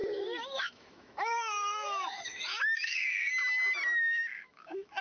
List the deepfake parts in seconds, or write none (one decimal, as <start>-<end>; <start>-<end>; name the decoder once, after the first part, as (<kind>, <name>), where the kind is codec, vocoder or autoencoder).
0.0-3.3 (autoencoder, DAC-VAE); 4.0-5.0